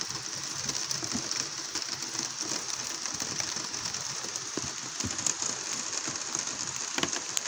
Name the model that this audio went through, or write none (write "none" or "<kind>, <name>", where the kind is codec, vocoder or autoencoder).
none